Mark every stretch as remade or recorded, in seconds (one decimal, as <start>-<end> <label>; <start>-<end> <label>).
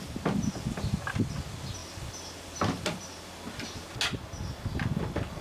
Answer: 0.0-5.4 recorded